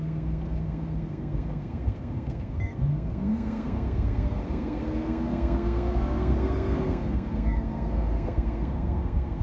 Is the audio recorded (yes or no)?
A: no